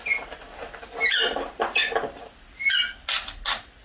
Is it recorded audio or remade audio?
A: recorded